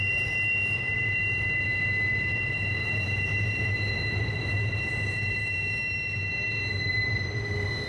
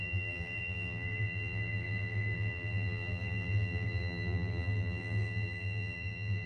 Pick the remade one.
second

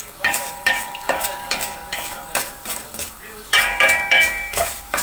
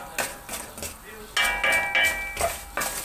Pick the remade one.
first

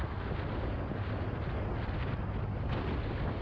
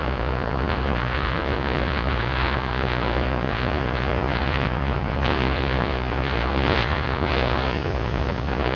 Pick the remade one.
second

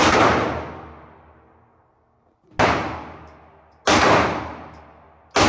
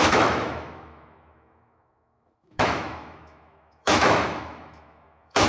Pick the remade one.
second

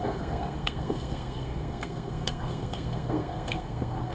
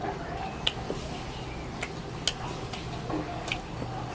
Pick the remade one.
first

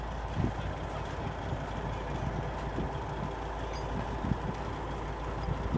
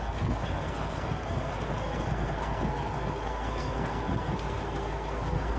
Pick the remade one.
second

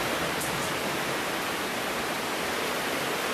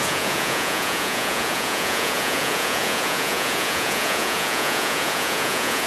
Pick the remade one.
second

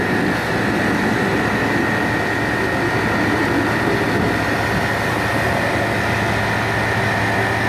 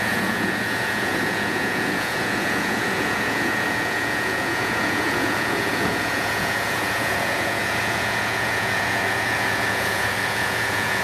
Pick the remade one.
second